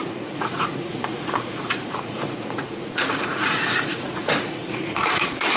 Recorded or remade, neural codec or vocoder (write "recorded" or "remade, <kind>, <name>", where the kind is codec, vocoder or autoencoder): remade, vocoder, Vocos